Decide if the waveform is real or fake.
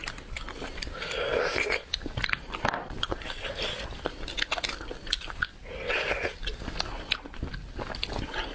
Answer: real